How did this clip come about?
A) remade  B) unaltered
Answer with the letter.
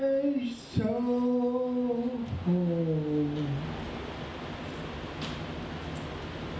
B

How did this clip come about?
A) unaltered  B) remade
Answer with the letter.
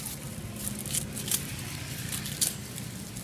A